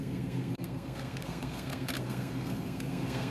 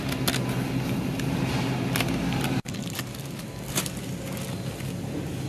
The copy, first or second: first